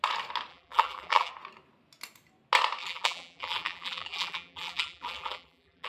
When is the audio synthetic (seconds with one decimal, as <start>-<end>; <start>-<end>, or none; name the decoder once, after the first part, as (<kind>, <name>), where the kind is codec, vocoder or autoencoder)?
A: 0.5-1.3 (vocoder, BigVGAN v2); 2.8-5.9